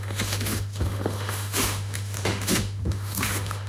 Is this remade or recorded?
remade